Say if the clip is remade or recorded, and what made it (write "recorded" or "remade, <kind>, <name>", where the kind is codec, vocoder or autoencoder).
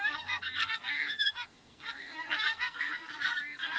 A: remade, codec, SNAC